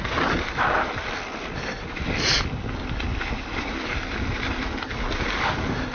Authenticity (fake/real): real